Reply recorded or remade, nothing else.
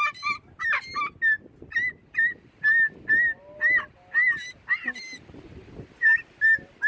recorded